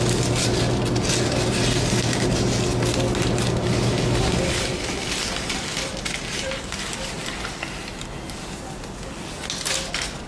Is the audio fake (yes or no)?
no